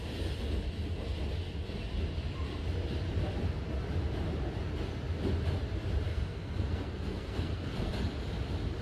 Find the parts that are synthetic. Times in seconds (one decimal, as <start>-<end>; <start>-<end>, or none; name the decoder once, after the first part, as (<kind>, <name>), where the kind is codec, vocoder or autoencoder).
6.1-7.9 (codec, SNAC)